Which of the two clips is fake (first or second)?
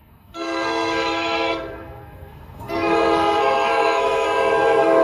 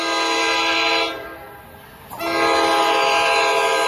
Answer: first